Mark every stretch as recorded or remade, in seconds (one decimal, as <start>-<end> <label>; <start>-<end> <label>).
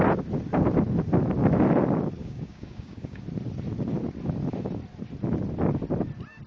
0.0-2.2 recorded; 2.2-3.2 remade; 3.2-6.5 recorded